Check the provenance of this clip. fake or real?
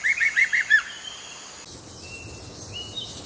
real